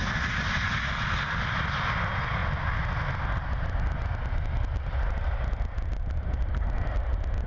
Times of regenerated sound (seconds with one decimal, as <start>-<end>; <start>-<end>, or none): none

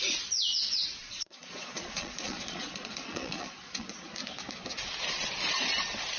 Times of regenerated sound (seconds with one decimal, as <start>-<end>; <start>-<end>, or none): 1.0-4.1

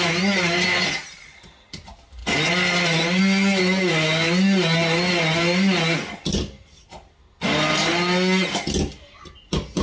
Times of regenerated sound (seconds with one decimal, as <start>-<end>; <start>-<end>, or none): none